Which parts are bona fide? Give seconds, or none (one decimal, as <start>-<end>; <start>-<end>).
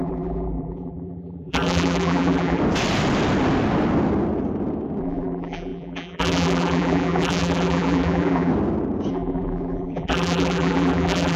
2.6-5.0; 8.5-9.1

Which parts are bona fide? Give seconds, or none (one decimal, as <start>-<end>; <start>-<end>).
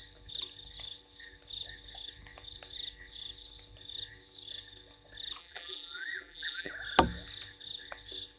0.0-5.4; 6.7-8.4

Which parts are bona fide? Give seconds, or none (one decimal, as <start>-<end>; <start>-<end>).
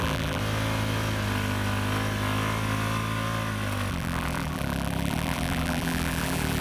0.4-3.9